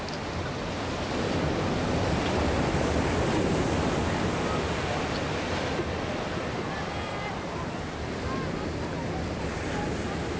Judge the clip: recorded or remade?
recorded